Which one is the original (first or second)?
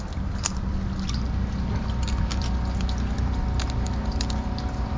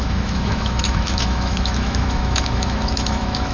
first